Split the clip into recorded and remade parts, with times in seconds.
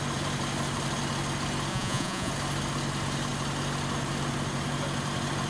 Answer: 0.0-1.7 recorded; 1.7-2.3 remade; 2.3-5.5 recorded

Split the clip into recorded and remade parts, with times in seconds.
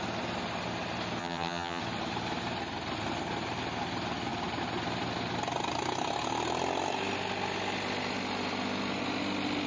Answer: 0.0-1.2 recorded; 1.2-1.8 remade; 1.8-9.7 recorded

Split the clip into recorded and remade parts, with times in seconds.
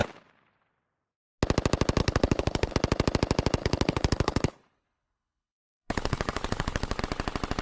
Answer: 0.0-2.0 recorded; 2.0-2.7 remade; 2.7-3.6 recorded; 3.6-7.0 remade; 7.0-7.6 recorded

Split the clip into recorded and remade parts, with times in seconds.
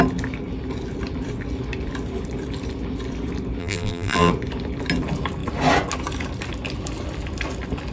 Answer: 0.0-3.6 recorded; 3.6-4.3 remade; 4.3-7.9 recorded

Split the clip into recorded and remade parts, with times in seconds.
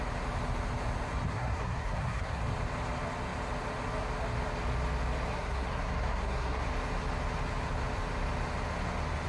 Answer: 0.0-1.3 recorded; 1.3-2.4 remade; 2.4-5.3 recorded; 5.3-6.7 remade; 6.7-9.3 recorded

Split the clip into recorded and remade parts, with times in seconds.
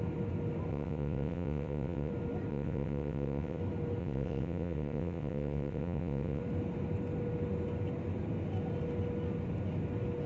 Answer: 0.0-0.7 recorded; 0.7-2.1 remade; 2.1-2.5 recorded; 2.5-3.6 remade; 3.6-4.0 recorded; 4.0-6.4 remade; 6.4-10.3 recorded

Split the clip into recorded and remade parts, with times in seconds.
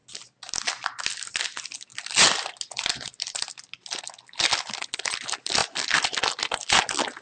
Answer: 0.0-7.2 recorded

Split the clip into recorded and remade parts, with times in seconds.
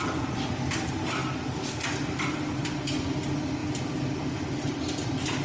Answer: 0.0-5.4 recorded